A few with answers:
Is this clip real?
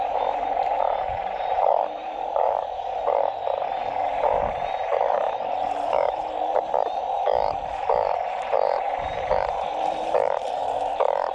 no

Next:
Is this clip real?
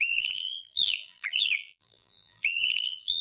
no